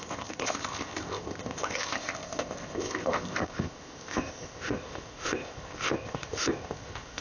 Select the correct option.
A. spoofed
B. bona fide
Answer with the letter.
A